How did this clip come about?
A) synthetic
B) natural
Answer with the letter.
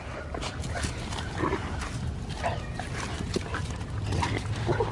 B